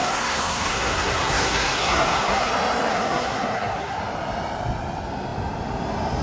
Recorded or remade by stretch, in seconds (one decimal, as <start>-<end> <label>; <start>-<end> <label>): 0.0-2.5 remade; 2.5-2.9 recorded; 2.9-4.0 remade; 4.0-6.2 recorded